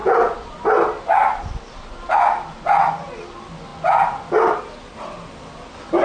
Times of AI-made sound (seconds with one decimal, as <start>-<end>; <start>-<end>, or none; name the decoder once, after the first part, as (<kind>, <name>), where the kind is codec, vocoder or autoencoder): none